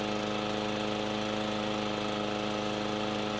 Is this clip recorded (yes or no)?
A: yes